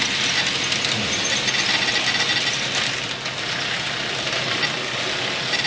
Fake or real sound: real